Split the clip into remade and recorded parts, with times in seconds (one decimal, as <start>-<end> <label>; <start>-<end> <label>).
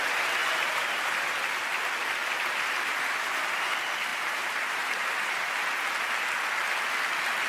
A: 0.0-0.4 recorded; 0.4-1.4 remade; 1.4-4.1 recorded; 4.1-5.5 remade; 5.5-7.5 recorded